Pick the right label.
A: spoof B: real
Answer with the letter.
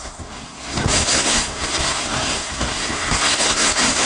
A